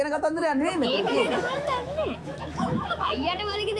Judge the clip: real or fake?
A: fake